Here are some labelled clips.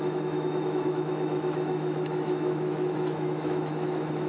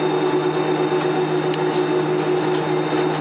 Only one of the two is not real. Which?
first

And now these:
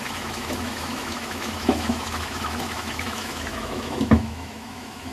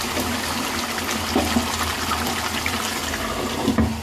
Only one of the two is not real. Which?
first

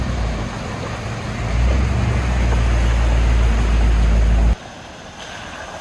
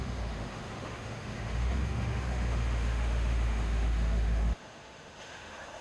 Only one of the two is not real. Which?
second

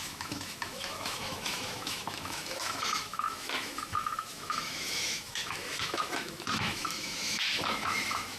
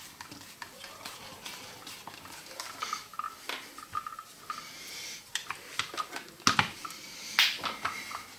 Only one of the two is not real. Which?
first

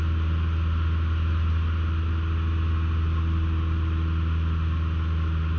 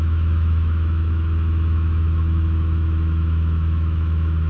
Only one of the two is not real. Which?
second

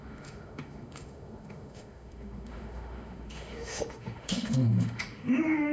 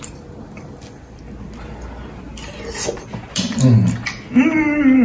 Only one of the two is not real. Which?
first